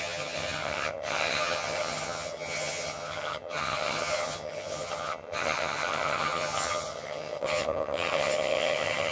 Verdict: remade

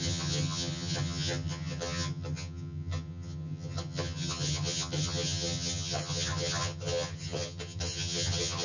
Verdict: remade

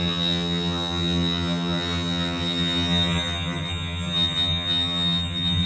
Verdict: remade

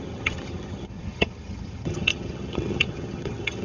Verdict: remade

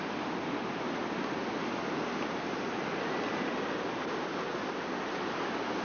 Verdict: recorded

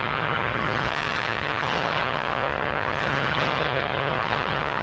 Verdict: remade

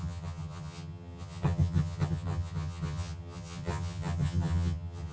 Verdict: remade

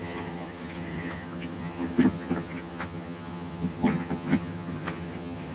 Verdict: remade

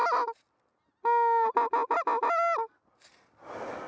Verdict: recorded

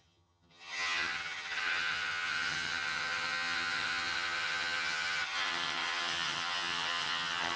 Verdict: remade